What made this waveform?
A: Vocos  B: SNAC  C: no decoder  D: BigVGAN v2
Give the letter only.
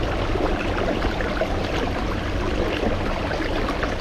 C